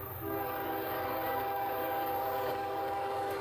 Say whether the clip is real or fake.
fake